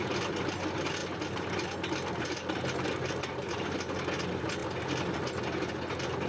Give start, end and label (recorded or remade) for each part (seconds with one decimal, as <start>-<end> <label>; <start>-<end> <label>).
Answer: 0.0-6.3 recorded

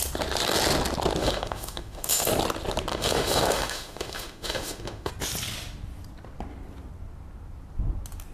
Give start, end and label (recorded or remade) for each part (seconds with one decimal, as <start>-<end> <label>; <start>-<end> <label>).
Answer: 0.0-1.2 recorded; 1.2-2.3 remade; 2.3-2.9 recorded; 2.9-5.1 remade; 5.1-8.3 recorded

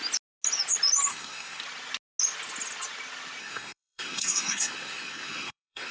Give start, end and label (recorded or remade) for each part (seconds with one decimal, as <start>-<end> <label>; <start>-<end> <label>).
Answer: 0.0-1.1 recorded; 1.1-1.6 remade; 1.6-3.4 recorded; 3.4-5.9 remade

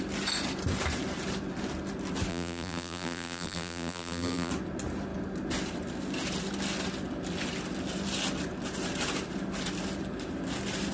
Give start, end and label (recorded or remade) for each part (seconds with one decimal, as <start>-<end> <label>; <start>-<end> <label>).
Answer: 0.0-2.3 recorded; 2.3-4.5 remade; 4.5-10.9 recorded

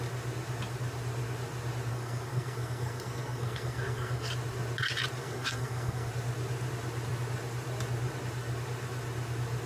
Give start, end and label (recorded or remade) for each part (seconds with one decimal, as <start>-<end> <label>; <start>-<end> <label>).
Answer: 0.0-1.9 recorded; 1.9-4.3 remade; 4.3-5.2 recorded; 5.2-6.1 remade; 6.1-9.7 recorded